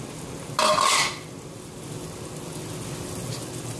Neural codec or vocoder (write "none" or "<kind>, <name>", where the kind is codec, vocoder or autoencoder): none